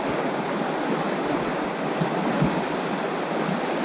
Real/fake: real